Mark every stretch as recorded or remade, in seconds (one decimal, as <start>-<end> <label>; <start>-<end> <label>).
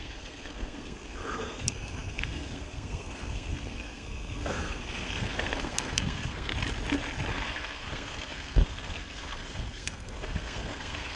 0.0-6.5 remade; 6.5-7.3 recorded; 7.3-11.2 remade